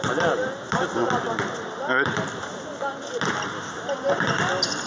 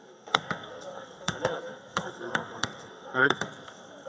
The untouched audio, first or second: first